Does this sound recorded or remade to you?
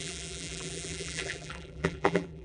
remade